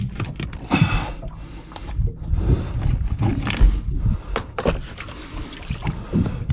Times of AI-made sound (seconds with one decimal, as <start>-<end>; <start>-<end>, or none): none